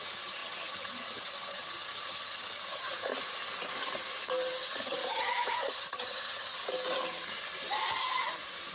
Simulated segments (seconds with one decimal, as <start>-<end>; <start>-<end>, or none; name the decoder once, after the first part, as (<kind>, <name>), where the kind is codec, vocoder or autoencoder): 0.0-3.1 (vocoder, HiFi-GAN); 4.7-6.6